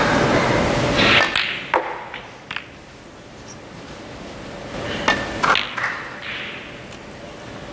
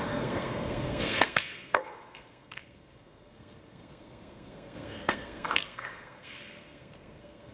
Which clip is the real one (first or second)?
first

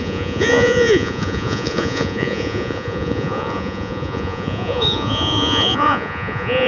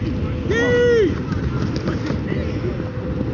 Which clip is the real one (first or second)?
second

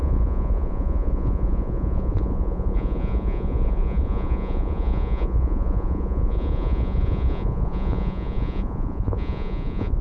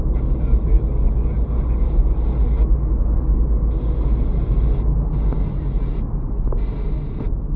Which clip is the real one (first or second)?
second